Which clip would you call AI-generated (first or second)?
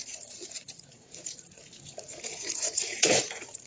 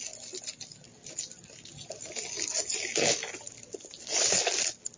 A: first